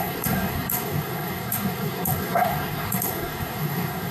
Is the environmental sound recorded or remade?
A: remade